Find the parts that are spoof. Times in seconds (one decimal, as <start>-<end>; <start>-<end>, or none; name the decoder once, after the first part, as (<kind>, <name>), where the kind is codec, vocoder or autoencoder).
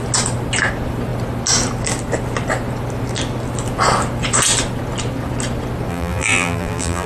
5.9-7.1 (vocoder, BigVGAN v2)